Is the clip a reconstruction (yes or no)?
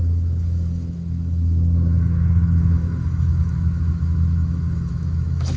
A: yes